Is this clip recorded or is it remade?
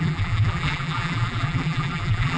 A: remade